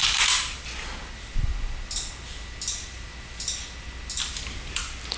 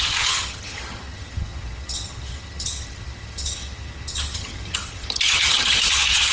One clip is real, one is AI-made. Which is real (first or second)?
first